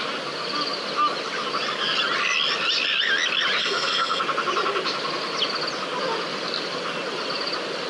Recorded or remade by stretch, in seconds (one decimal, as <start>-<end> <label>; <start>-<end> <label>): 0.0-3.6 recorded; 3.6-4.2 remade; 4.2-7.9 recorded